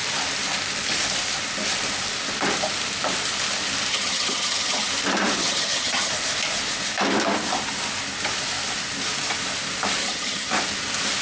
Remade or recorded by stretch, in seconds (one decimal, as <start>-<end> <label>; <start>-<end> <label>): 0.0-3.9 recorded; 3.9-4.9 remade; 4.9-5.4 recorded; 5.4-6.1 remade; 6.1-10.0 recorded; 10.0-10.5 remade; 10.5-11.2 recorded